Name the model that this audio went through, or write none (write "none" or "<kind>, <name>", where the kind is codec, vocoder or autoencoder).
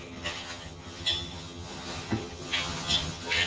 vocoder, HiFi-GAN